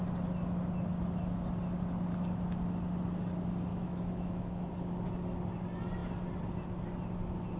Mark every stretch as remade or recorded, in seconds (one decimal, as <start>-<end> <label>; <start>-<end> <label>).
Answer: 0.0-3.7 recorded; 3.7-4.7 remade; 4.7-7.6 recorded